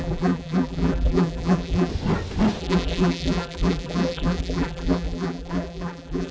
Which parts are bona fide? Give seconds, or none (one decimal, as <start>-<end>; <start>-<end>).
1.9-2.6